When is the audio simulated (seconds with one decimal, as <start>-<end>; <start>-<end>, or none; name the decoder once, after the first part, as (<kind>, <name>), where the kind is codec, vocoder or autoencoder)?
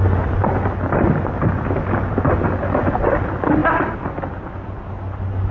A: none